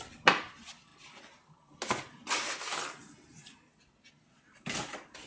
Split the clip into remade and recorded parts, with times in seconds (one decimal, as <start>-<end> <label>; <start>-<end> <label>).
0.0-5.3 recorded